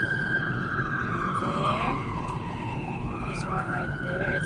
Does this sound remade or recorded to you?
remade